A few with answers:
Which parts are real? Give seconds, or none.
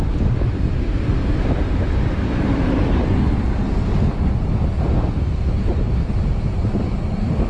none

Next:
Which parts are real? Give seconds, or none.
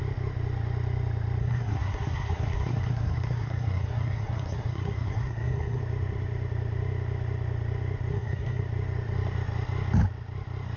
0.0-1.4; 5.8-8.1; 8.6-10.8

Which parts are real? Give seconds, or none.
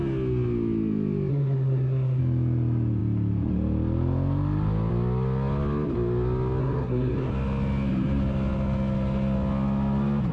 0.0-1.3; 2.2-6.6; 7.3-10.3